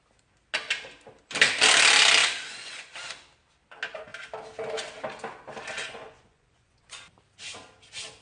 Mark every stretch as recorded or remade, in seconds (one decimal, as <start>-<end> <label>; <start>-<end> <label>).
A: 0.0-2.2 recorded; 2.2-2.9 remade; 2.9-5.8 recorded; 5.8-7.0 remade; 7.0-8.2 recorded